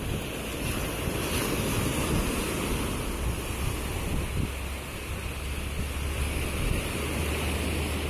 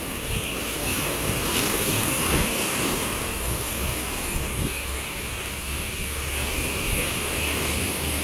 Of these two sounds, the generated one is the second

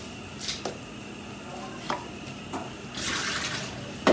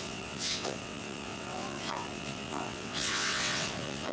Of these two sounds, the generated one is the second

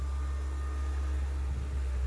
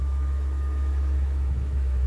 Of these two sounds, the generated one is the second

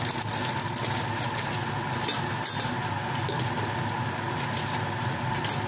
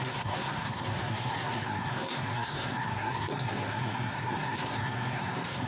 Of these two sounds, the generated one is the second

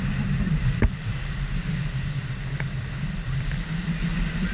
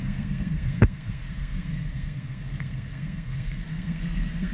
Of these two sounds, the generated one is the second